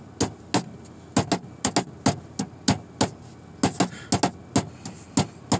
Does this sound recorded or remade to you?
recorded